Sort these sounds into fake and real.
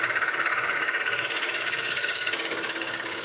fake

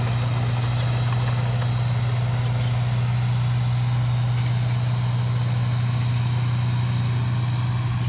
real